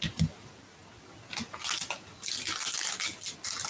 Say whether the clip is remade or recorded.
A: recorded